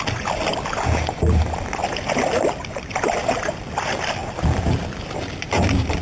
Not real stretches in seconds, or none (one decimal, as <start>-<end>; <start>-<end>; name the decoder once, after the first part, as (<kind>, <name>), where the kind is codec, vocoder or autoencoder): none